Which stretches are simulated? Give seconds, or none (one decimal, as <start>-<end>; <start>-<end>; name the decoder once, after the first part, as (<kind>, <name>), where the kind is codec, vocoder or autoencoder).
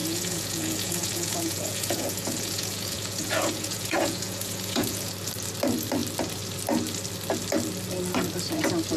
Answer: 0.0-5.1 (vocoder, Vocos)